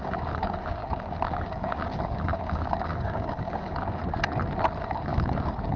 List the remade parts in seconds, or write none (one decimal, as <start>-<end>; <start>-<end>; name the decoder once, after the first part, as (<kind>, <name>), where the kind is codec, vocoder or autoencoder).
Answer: 0.0-4.0 (codec, DAC); 4.8-5.8